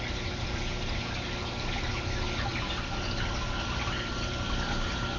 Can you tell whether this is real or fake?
real